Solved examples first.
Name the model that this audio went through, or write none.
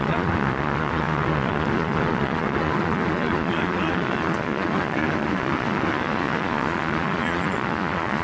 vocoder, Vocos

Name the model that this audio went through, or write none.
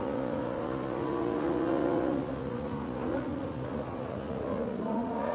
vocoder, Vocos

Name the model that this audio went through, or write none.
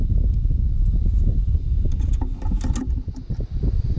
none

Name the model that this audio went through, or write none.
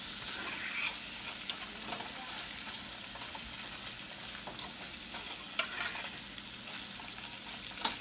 none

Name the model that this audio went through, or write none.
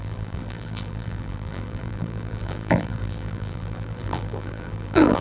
vocoder, BigVGAN v2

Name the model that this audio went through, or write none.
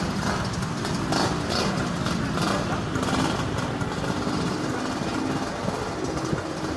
none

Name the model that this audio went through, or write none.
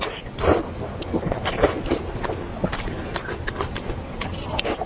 none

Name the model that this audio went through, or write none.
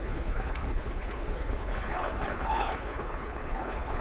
codec, HILCodec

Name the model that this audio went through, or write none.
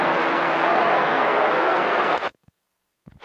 codec, SNAC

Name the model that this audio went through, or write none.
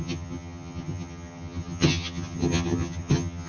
vocoder, HiFi-GAN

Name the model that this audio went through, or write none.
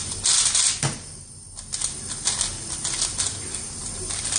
none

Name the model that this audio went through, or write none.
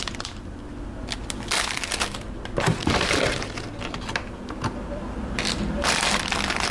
none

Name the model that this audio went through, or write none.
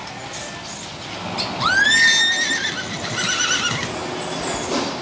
none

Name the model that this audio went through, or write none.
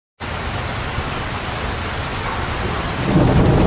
none